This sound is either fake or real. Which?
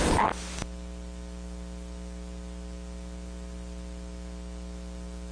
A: real